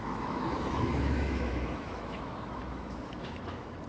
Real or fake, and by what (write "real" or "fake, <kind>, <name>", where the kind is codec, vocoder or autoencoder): fake, autoencoder, DAC-VAE